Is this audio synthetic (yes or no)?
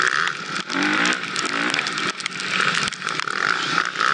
no